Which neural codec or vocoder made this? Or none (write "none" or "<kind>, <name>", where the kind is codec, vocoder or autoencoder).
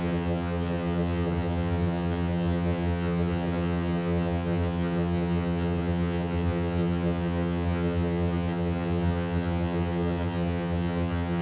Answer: vocoder, HiFi-GAN